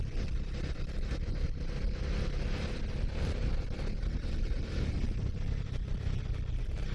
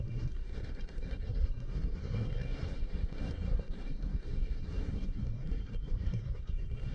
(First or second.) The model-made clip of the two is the second